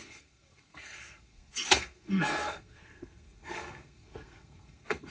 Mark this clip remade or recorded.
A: remade